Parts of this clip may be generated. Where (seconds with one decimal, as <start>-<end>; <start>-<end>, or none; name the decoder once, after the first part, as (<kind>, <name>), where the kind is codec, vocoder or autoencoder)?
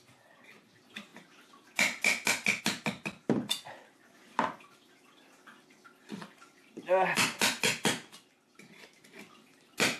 none